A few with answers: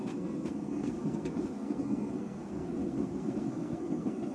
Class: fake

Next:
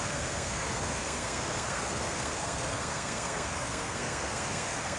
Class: fake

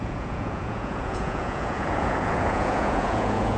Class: fake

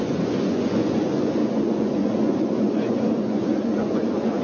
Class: fake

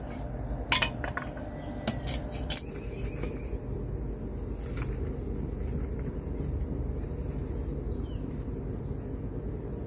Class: real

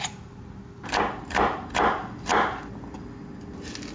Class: real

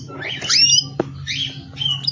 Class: real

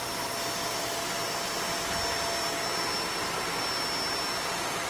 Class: real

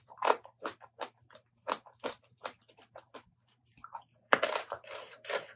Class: fake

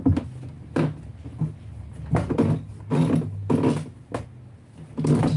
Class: real